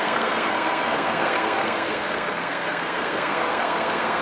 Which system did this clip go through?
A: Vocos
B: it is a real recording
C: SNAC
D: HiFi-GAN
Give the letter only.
C